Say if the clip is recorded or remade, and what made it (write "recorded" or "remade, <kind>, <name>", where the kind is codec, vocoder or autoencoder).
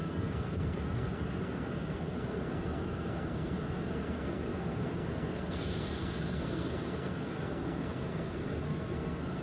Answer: remade, codec, SNAC